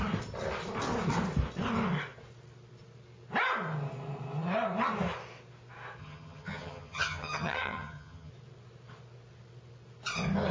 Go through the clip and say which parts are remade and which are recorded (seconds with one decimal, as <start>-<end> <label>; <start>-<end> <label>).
0.0-6.0 recorded; 6.0-8.3 remade; 8.3-10.5 recorded